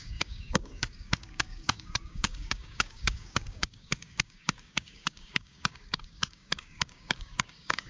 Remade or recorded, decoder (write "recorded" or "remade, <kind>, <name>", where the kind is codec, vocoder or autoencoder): remade, codec, DAC